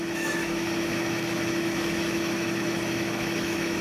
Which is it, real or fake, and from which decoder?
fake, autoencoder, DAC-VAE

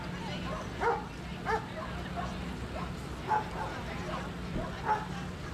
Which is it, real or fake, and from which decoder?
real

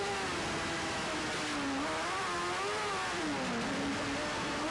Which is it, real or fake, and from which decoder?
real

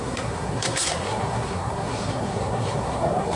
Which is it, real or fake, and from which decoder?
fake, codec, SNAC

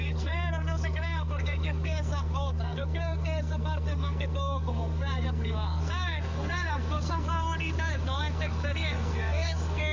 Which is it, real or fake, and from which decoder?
fake, codec, SNAC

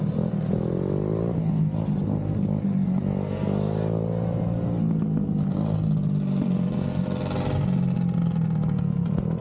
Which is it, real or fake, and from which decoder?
real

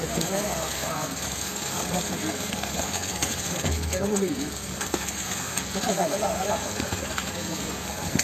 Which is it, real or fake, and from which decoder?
fake, codec, SNAC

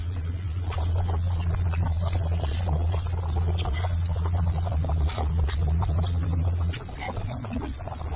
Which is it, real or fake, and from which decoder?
fake, vocoder, Vocos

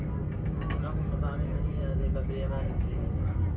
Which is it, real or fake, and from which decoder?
real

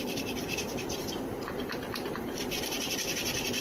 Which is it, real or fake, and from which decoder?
fake, vocoder, BigVGAN v2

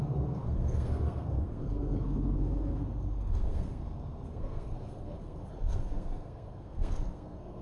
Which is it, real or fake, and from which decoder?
fake, codec, SNAC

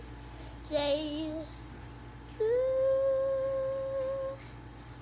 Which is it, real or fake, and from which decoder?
real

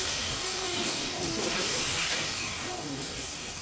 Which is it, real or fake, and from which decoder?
fake, codec, DAC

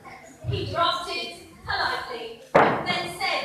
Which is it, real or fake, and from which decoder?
fake, vocoder, BigVGAN v2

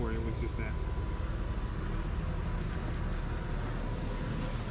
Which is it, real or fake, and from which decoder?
real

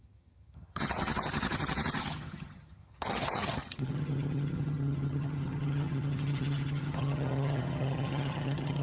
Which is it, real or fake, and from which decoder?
fake, vocoder, HiFi-GAN